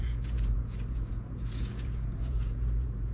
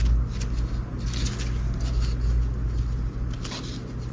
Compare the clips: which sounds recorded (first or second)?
second